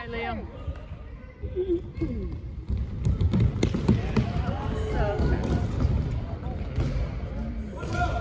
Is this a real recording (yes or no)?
yes